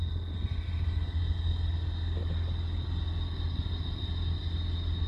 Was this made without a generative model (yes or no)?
yes